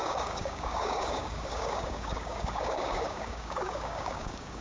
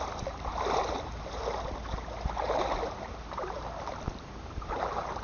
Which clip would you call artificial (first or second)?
first